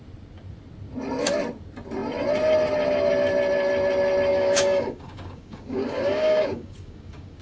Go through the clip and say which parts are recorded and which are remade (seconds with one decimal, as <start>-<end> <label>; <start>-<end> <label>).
0.0-4.3 recorded; 4.3-7.4 remade